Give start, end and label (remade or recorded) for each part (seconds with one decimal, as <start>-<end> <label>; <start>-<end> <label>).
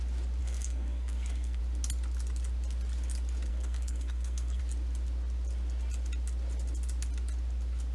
0.0-0.4 recorded; 0.4-1.6 remade; 1.6-3.5 recorded; 3.5-4.6 remade; 4.6-7.9 recorded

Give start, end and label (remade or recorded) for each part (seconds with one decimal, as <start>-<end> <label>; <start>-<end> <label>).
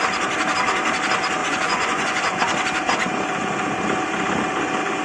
0.0-1.4 recorded; 1.4-2.4 remade; 2.4-5.0 recorded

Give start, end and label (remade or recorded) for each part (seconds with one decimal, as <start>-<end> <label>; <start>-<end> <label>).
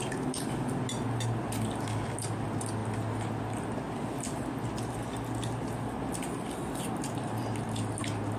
0.0-8.4 recorded